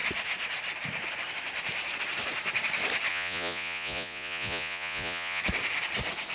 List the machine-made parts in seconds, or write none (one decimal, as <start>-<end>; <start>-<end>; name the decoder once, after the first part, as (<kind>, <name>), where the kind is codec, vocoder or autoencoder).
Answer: 3.1-5.4 (vocoder, Vocos)